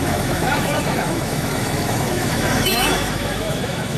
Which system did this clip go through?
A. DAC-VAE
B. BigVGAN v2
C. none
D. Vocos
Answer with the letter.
A